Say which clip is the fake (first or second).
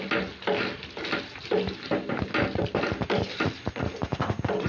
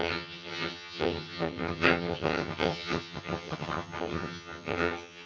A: second